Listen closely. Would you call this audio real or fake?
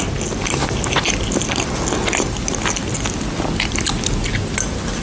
real